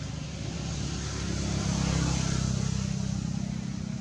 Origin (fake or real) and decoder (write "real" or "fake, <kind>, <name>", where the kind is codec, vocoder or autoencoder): real